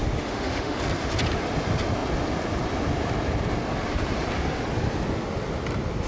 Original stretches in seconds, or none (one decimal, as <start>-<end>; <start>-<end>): 0.8-6.1